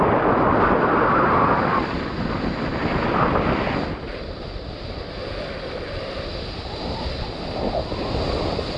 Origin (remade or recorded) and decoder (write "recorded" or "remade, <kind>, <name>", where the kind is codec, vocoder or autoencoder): recorded